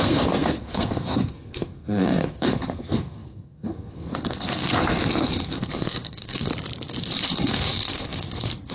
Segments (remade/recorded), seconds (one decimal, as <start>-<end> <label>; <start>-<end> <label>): 0.0-6.5 remade; 6.5-7.0 recorded; 7.0-8.7 remade